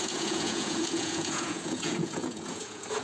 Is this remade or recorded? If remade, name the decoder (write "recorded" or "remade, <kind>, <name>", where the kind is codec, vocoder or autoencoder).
remade, vocoder, Vocos